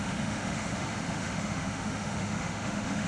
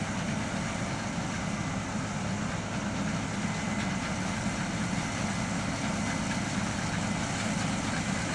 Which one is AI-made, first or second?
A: first